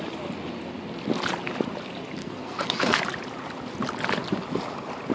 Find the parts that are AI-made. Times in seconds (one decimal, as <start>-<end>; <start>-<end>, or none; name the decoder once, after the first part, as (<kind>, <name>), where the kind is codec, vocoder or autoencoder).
2.2-3.0 (codec, SNAC)